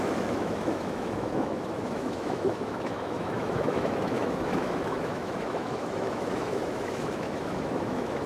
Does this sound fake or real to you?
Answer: fake